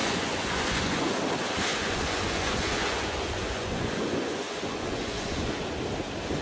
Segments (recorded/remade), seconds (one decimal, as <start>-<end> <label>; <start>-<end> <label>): 0.0-1.2 remade; 1.2-1.7 recorded; 1.7-5.5 remade; 5.5-6.4 recorded